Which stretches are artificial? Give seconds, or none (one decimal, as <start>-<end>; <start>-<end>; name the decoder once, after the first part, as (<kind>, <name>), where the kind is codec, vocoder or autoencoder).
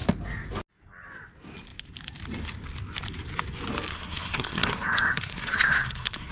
3.9-6.3 (codec, SNAC)